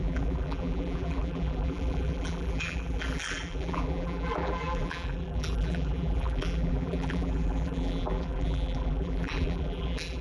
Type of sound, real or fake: fake